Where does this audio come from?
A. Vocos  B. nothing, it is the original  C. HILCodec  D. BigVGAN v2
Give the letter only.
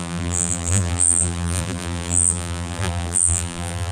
D